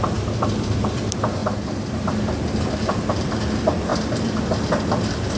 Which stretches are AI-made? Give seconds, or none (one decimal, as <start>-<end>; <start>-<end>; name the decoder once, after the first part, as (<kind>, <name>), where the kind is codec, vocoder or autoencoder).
0.0-1.4 (vocoder, BigVGAN v2); 3.4-5.4